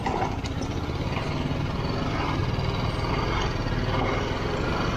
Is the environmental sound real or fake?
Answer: real